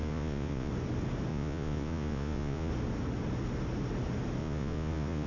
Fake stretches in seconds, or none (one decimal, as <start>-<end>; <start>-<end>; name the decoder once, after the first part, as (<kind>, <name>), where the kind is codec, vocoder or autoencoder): 0.0-0.7 (vocoder, Vocos); 1.3-2.7; 4.4-5.3